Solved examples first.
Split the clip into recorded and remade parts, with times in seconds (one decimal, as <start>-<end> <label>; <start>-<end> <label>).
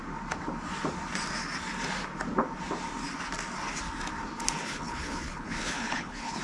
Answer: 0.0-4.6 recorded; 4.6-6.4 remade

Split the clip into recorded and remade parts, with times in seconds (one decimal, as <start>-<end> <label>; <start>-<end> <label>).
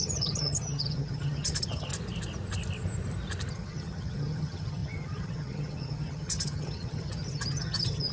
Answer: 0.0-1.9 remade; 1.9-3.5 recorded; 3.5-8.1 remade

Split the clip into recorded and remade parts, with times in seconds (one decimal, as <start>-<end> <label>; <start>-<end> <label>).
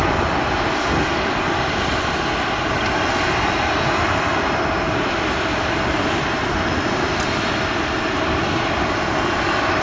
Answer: 0.0-9.8 recorded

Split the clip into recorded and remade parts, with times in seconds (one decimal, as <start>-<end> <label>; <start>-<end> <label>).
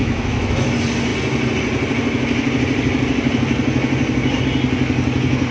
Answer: 0.0-0.7 remade; 0.7-5.5 recorded